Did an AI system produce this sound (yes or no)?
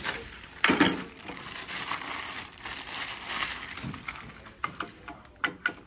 no